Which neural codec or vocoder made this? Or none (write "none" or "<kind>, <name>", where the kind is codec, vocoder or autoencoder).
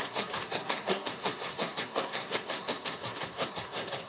codec, SNAC